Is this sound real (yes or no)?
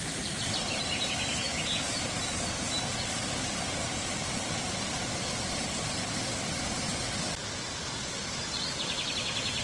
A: yes